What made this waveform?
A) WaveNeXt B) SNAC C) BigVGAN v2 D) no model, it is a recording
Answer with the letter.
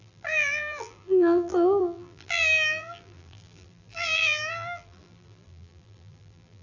C